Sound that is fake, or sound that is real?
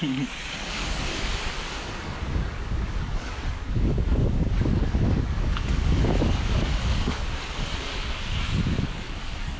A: fake